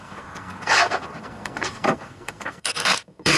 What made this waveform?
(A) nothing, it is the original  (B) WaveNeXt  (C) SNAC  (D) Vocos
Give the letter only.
C